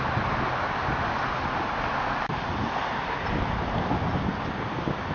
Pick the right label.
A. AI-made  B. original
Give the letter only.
B